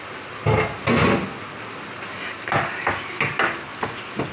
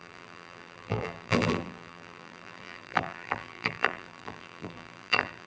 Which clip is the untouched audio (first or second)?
first